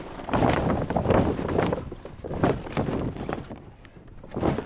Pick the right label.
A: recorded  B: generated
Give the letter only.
A